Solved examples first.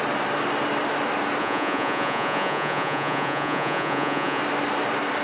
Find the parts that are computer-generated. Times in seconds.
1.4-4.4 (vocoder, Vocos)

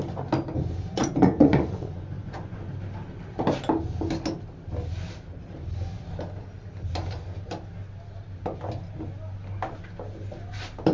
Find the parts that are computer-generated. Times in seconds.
0.9-2.6 (vocoder, Vocos)

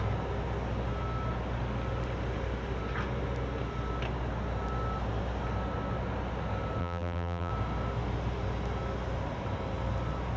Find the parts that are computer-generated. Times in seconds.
6.8-7.5 (vocoder, BigVGAN v2)

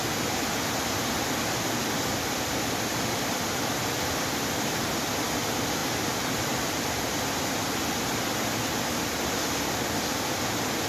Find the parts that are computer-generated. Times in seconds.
1.8-5.0 (vocoder, BigVGAN v2); 5.8-7.8

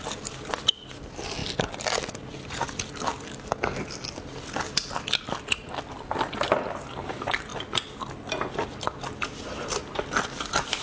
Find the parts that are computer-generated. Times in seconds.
none